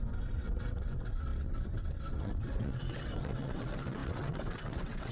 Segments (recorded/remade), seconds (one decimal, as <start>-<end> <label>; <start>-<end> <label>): 0.0-5.1 remade